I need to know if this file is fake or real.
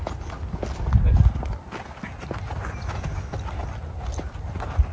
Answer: real